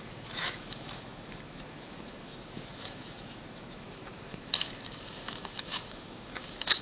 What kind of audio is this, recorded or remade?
remade